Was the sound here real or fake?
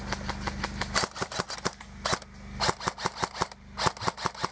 real